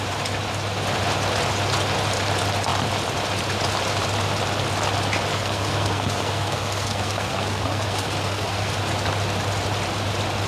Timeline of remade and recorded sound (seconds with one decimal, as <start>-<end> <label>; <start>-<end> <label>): 0.0-5.3 recorded; 5.3-8.7 remade; 8.7-10.5 recorded